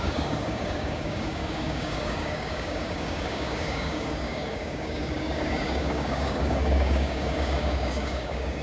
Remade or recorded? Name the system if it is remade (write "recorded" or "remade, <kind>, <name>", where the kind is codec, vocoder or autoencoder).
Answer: remade, codec, DAC